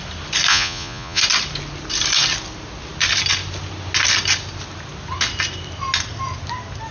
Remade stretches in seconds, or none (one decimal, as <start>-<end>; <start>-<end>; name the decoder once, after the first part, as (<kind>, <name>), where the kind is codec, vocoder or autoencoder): 0.5-1.2 (vocoder, Vocos)